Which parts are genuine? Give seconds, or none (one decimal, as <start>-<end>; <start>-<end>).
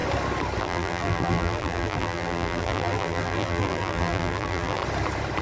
0.0-0.6; 4.8-5.4